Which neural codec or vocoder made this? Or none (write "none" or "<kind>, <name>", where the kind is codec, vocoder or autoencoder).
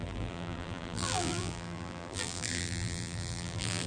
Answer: vocoder, BigVGAN v2